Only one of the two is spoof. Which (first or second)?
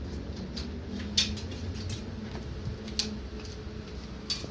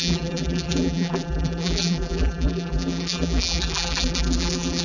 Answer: second